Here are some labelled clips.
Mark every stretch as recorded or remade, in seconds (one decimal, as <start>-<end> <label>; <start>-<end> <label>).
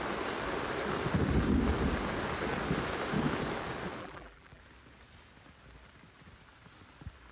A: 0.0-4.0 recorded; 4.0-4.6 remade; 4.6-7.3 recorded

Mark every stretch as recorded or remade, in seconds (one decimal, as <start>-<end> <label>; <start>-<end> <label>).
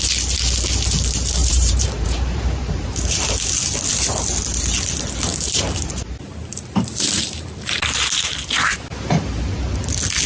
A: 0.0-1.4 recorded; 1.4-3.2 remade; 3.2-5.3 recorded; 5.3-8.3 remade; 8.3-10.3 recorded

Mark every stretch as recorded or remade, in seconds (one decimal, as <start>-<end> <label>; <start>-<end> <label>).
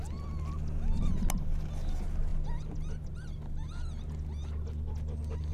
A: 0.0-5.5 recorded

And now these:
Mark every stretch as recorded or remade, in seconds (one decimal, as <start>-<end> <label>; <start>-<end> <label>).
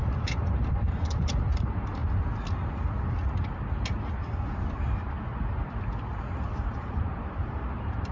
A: 0.0-2.0 remade; 2.0-6.3 recorded; 6.3-8.1 remade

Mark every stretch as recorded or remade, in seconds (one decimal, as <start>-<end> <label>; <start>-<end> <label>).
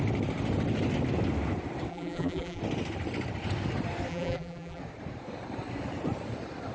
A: 0.0-1.9 recorded; 1.9-2.6 remade; 2.6-4.1 recorded; 4.1-4.8 remade; 4.8-6.7 recorded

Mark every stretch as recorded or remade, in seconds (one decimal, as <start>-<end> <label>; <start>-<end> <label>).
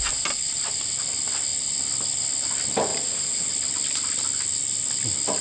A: 0.0-2.9 recorded; 2.9-3.5 remade; 3.5-5.4 recorded